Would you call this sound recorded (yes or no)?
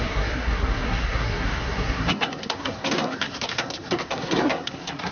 no